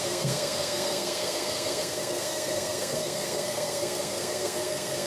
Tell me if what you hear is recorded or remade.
remade